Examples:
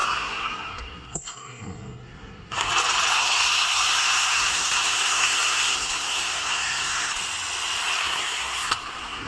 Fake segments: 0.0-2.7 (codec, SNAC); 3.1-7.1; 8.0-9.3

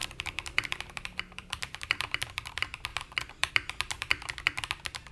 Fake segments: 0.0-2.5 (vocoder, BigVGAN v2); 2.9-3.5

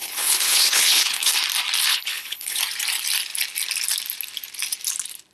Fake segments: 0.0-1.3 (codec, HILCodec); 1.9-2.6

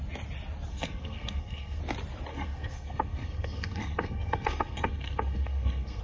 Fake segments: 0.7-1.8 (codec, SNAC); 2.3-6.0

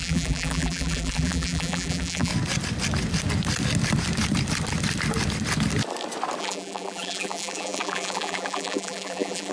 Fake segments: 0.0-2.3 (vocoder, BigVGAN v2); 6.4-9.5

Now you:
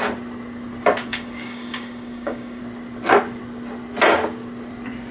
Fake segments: 1.1-2.6 (codec, DAC)

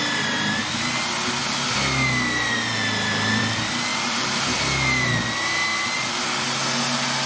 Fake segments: 3.9-4.4 (vocoder, BigVGAN v2)

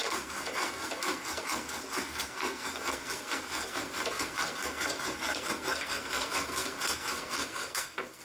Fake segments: 0.0-8.2 (codec, SNAC)